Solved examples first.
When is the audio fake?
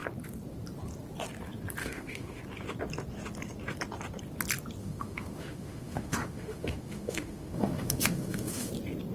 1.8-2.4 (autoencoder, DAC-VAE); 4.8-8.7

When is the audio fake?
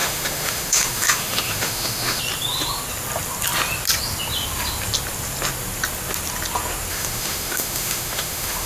0.0-2.2 (autoencoder, DAC-VAE); 6.9-8.7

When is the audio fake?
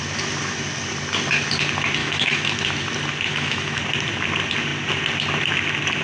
2.0-2.6 (autoencoder, DAC-VAE); 3.3-3.8